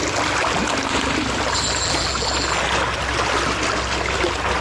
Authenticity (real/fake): real